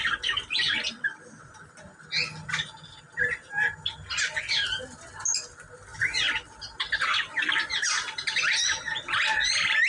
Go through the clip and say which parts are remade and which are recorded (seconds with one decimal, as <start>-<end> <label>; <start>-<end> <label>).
0.0-9.9 recorded